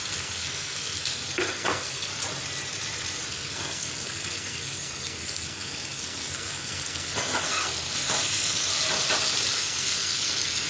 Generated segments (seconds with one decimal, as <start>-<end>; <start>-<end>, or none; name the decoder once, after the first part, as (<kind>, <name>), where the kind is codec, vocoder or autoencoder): 0.0-2.1 (codec, SNAC); 3.3-8.7; 9.5-10.7